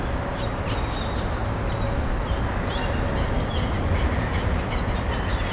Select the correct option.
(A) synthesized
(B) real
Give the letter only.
B